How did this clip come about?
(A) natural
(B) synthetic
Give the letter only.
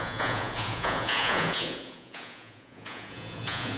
B